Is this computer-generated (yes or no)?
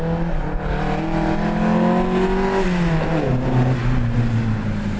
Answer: no